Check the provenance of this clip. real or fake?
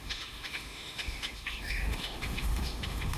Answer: fake